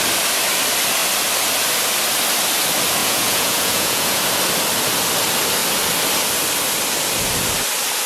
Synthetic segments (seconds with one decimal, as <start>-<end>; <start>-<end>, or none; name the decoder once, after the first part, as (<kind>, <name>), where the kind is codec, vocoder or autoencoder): 3.0-4.2 (vocoder, Vocos)